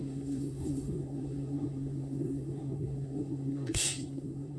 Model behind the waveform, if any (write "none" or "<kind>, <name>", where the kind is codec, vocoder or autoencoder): codec, SNAC